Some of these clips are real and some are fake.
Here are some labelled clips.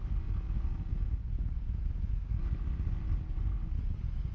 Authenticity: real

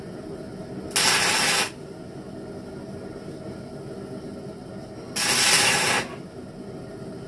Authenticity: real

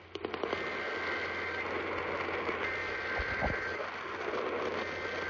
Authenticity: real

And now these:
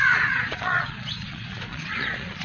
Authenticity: fake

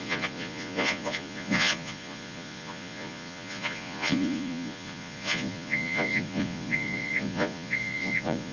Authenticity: fake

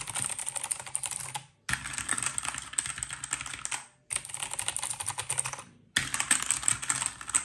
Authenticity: real